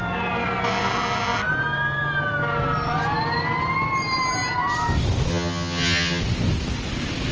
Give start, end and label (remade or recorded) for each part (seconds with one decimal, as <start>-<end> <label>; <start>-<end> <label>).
0.0-5.3 recorded; 5.3-6.2 remade; 6.2-7.3 recorded